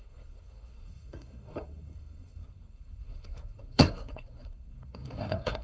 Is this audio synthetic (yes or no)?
yes